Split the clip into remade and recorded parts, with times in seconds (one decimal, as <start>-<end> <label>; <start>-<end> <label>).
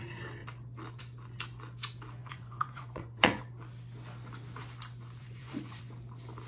0.0-2.2 recorded; 2.2-3.4 remade; 3.4-5.2 recorded; 5.2-5.8 remade; 5.8-6.5 recorded